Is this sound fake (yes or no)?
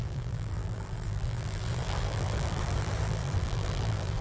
yes